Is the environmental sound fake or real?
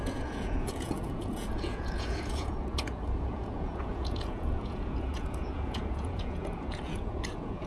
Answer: fake